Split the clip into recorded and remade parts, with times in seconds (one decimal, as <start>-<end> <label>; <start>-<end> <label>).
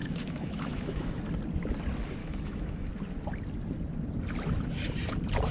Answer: 0.0-1.2 remade; 1.2-2.2 recorded; 2.2-2.9 remade; 2.9-5.5 recorded